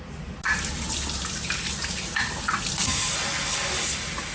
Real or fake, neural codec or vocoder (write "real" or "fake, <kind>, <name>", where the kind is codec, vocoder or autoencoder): real